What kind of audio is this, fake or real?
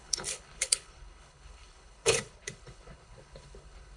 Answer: fake